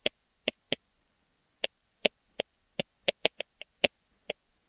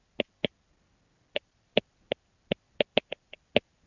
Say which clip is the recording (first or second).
second